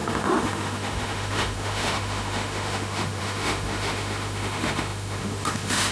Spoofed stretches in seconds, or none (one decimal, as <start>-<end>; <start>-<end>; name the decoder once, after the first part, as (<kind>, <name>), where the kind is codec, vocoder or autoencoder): 0.0-5.9 (autoencoder, DAC-VAE)